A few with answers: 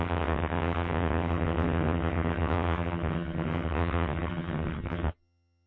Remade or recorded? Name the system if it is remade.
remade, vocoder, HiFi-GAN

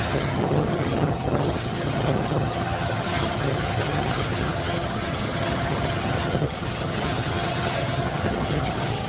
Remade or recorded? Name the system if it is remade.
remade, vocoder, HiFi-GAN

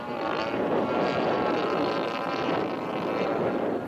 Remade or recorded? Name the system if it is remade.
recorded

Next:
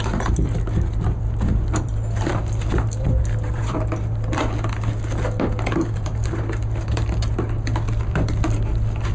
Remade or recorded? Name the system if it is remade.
remade, vocoder, BigVGAN v2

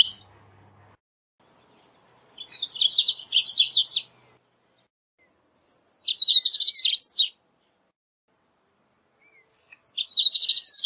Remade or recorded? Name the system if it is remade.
recorded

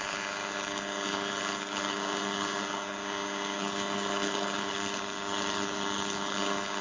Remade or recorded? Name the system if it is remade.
remade, codec, HILCodec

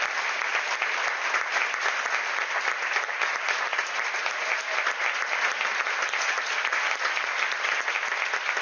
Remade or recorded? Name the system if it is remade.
recorded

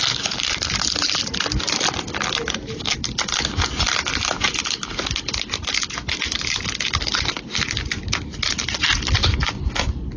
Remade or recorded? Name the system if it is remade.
recorded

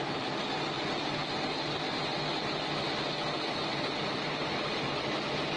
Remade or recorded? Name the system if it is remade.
recorded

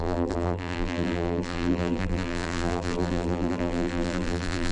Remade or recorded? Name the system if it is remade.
remade, vocoder, BigVGAN v2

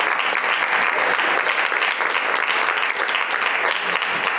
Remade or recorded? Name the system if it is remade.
recorded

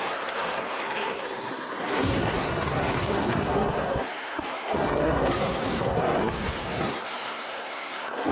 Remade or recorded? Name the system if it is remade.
remade, codec, SNAC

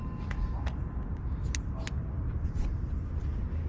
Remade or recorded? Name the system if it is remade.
recorded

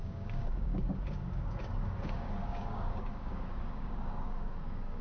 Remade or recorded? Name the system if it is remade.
remade, codec, DAC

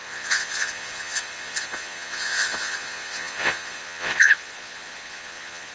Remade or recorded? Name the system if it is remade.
remade, vocoder, Vocos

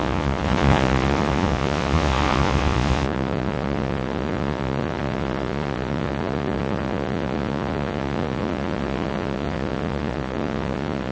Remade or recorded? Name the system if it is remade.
remade, vocoder, Vocos